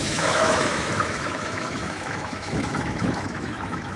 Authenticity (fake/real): fake